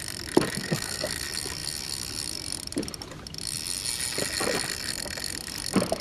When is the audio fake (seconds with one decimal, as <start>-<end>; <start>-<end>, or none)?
0.6-1.1